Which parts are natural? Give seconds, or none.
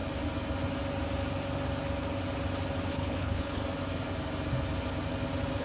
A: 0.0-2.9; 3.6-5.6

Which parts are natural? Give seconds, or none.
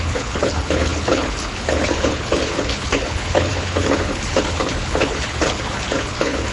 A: none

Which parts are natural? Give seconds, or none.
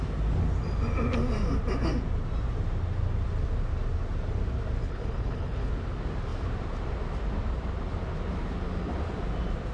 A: 0.0-4.8; 5.7-9.7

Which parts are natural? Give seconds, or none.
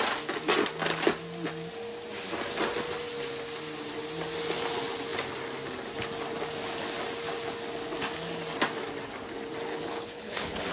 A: 0.0-9.7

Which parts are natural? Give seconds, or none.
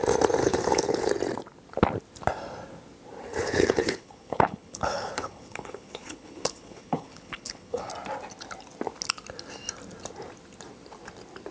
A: 0.0-0.4; 1.1-3.3; 7.9-11.5